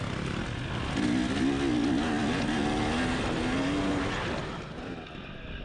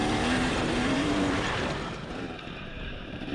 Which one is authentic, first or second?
first